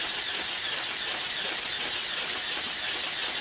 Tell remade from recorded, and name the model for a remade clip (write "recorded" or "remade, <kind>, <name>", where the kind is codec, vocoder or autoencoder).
recorded